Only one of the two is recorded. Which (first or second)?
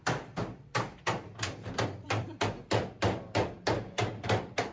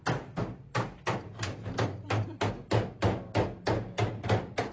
second